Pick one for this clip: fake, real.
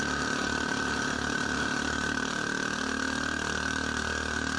fake